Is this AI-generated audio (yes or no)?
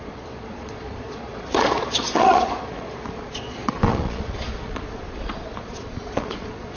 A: yes